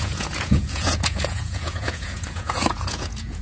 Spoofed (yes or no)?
yes